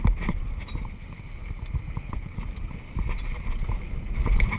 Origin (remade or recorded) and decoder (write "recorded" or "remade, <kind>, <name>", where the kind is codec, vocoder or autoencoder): recorded